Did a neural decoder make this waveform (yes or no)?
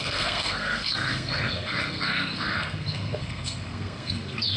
yes